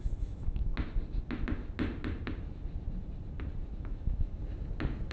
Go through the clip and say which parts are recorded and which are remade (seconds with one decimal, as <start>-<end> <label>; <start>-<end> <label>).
0.0-0.7 remade; 0.7-3.8 recorded; 3.8-4.4 remade; 4.4-5.1 recorded